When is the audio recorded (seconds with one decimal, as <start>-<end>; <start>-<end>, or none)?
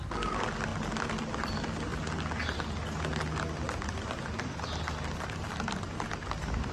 0.0-6.7